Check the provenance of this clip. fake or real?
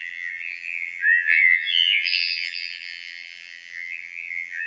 fake